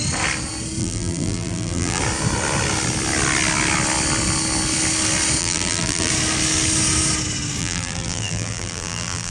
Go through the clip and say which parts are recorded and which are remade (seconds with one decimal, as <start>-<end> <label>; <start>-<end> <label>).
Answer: 0.0-0.8 recorded; 0.8-2.0 remade; 2.0-5.4 recorded; 5.4-6.1 remade; 6.1-7.6 recorded; 7.6-9.3 remade